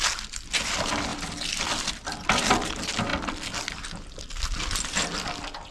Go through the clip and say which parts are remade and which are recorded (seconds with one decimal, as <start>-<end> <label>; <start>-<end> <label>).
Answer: 0.0-5.7 recorded